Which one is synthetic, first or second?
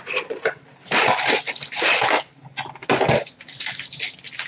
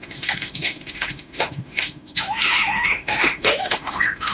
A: second